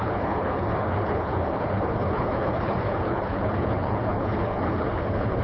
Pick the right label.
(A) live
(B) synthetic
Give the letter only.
B